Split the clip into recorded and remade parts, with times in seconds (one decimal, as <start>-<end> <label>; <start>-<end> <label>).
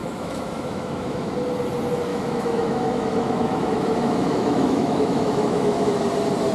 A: 0.0-1.3 remade; 1.3-2.1 recorded; 2.1-6.0 remade; 6.0-6.5 recorded